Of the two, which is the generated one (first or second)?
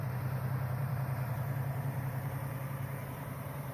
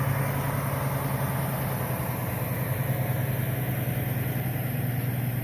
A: first